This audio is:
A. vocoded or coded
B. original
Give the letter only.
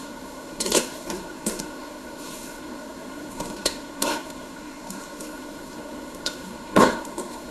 A